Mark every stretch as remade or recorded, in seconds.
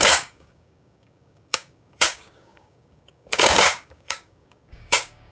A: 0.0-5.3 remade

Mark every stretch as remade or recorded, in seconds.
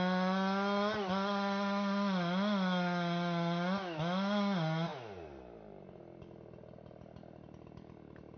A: 0.0-8.4 recorded